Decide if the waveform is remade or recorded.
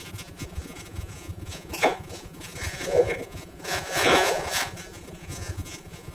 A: remade